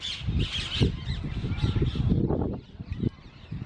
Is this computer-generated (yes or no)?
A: no